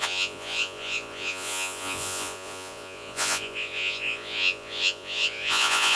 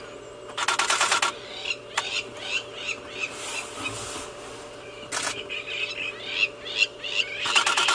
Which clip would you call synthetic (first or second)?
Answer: first